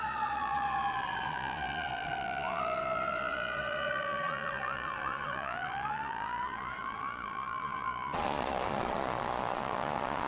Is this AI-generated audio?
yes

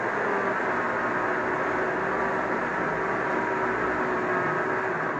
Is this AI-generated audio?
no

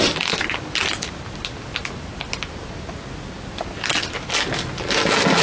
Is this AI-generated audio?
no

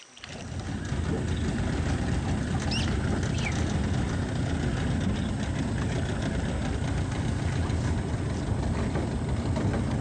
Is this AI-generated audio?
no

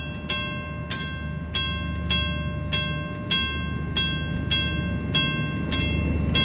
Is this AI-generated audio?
no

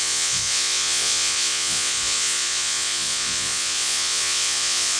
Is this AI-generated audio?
yes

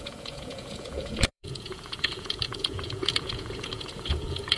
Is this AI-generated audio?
yes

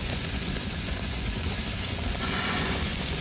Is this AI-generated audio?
yes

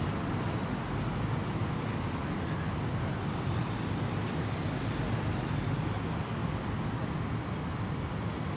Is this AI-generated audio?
no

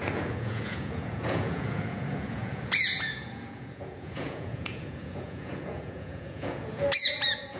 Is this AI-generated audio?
yes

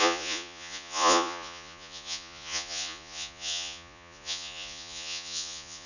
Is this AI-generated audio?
yes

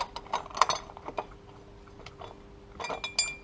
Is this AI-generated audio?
no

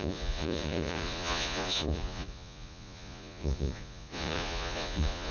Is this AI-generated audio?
yes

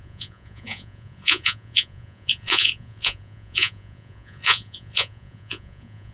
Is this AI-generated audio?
yes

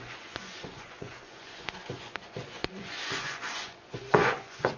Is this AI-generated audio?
yes